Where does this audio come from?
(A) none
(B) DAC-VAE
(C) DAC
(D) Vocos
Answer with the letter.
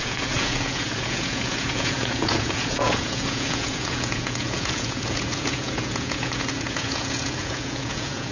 D